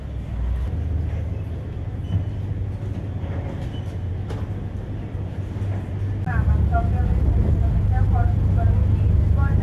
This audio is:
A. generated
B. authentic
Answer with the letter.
B